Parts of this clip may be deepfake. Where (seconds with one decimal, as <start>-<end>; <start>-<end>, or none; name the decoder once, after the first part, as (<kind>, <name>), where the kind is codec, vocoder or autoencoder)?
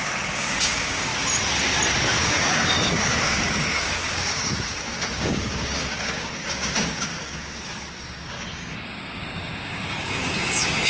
0.0-1.1 (codec, DAC); 2.1-10.9